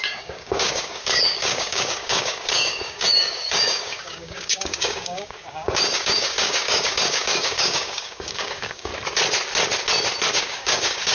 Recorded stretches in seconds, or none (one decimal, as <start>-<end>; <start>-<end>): 8.9-10.3